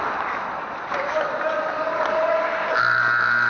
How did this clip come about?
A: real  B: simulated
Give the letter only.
A